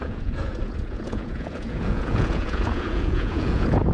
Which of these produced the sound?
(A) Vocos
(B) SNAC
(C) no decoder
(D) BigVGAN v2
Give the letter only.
A